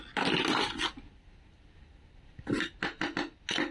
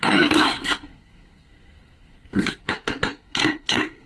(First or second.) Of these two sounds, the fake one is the second